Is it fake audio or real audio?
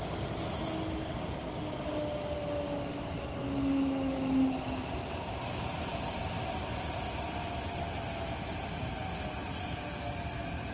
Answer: real